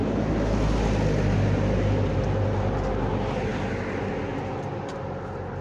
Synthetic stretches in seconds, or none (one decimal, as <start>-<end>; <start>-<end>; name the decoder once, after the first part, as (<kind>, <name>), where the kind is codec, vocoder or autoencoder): none